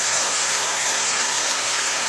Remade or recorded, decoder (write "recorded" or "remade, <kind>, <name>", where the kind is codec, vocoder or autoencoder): remade, codec, SNAC